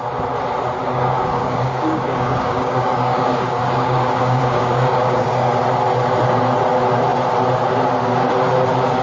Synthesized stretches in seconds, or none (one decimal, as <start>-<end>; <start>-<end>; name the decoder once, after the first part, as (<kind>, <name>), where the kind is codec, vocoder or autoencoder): 0.8-5.6 (codec, DAC)